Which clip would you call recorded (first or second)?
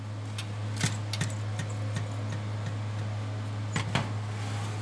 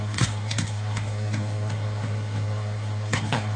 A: first